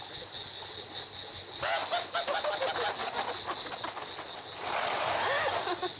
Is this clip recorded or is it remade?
recorded